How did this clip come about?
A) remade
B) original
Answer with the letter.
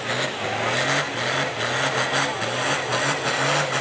B